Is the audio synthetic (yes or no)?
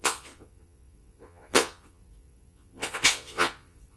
yes